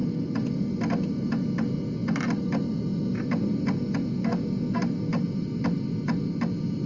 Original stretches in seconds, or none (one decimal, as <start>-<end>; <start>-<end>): 0.0-6.9